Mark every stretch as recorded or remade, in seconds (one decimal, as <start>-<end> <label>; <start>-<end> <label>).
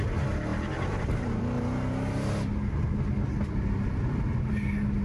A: 0.0-0.5 recorded; 0.5-1.4 remade; 1.4-5.0 recorded